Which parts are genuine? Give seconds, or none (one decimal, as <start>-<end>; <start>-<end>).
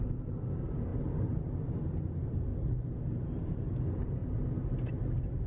0.0-5.5